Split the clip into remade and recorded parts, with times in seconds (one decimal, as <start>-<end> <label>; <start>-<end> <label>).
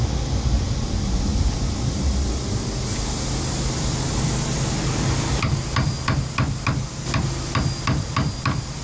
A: 0.0-8.8 recorded